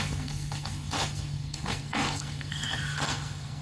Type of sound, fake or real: fake